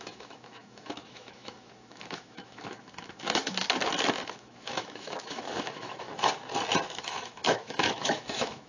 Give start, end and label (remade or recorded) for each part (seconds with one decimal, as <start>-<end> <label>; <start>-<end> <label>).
0.0-3.6 remade; 3.6-4.3 recorded; 4.3-6.1 remade; 6.1-7.0 recorded; 7.0-8.7 remade